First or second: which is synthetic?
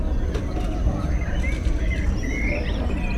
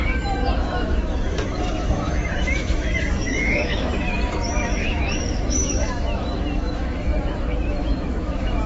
second